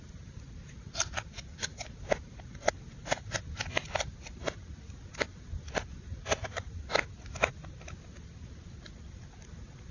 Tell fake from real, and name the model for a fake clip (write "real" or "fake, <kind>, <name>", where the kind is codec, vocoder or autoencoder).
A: real